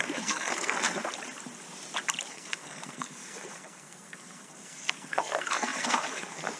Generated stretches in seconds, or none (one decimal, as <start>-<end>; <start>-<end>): 0.0-1.1; 2.3-6.6